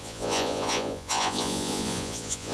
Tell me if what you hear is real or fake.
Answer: fake